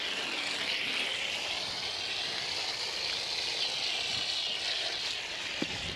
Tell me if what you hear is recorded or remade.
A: recorded